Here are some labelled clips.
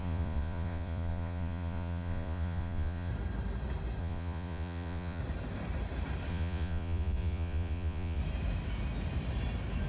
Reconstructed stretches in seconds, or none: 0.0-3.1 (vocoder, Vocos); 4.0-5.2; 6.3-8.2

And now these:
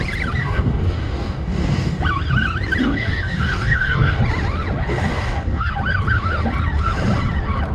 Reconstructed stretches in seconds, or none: 0.4-2.0 (codec, DAC); 2.8-4.2; 4.8-5.7

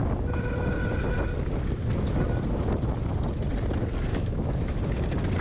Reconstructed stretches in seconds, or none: 4.1-4.8 (autoencoder, DAC-VAE)

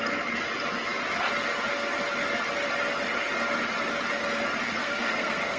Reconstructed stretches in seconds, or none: 4.8-5.6 (codec, SNAC)

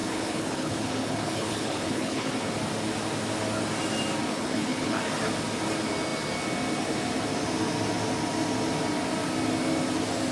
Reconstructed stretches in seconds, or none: 0.0-2.3 (codec, HILCodec); 4.3-5.0